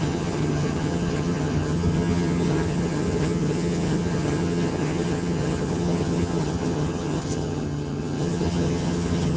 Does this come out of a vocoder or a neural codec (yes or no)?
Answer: yes